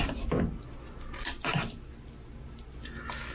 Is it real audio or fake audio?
real